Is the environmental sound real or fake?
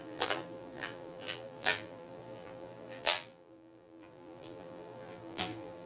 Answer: fake